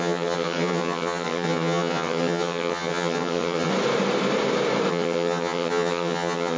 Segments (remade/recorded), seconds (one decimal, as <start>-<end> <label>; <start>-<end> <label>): 0.0-3.7 remade; 3.7-4.9 recorded; 4.9-6.6 remade